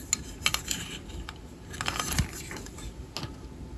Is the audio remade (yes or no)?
no